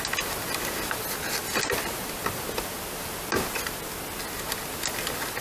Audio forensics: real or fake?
real